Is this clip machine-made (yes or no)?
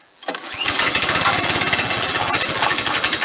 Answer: yes